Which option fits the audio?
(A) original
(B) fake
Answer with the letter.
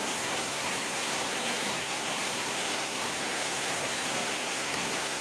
B